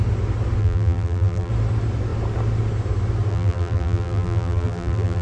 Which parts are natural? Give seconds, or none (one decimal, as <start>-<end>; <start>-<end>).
0.0-0.6; 1.5-3.3